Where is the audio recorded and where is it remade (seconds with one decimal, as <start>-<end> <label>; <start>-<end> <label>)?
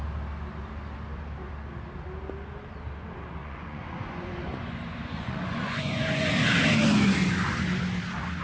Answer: 0.0-3.4 recorded; 3.4-6.3 remade; 6.3-8.4 recorded